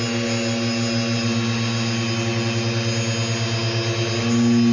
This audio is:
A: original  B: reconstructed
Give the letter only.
A